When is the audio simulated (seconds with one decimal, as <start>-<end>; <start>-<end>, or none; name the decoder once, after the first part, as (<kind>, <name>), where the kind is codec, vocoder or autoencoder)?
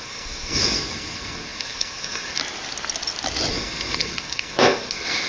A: 0.0-2.4 (codec, SNAC); 3.5-5.3